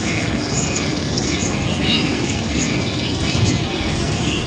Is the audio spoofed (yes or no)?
yes